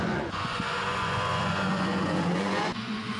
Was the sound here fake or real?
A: fake